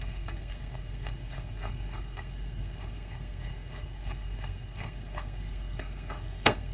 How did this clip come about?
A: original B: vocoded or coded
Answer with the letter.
B